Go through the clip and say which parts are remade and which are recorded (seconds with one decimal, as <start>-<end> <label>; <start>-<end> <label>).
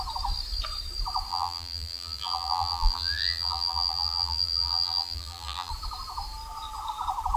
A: 0.0-1.3 recorded; 1.3-5.7 remade; 5.7-7.4 recorded